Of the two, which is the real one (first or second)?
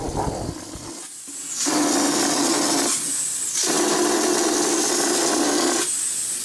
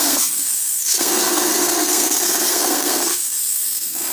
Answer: first